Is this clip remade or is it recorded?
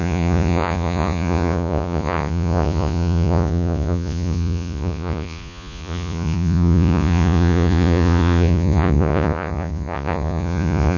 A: remade